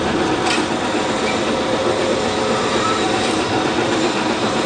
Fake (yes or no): no